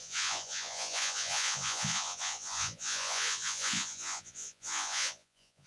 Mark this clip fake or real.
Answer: fake